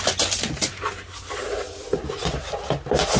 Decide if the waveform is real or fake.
real